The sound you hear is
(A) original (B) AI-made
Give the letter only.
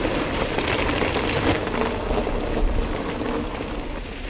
A